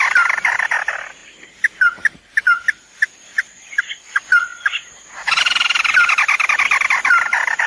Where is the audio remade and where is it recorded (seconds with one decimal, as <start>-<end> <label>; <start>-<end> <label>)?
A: 0.0-3.3 recorded; 3.3-3.8 remade; 3.8-7.7 recorded